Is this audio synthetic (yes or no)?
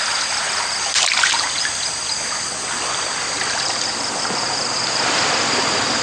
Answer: no